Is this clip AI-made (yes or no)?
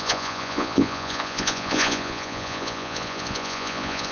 yes